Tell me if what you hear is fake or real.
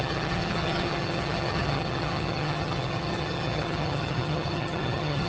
fake